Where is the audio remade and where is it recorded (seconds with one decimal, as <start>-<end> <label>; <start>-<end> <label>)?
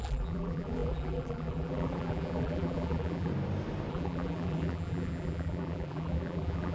0.0-3.3 remade; 3.3-3.9 recorded; 3.9-6.7 remade